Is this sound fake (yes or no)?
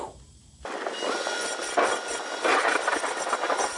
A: no